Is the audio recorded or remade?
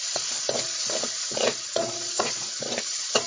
remade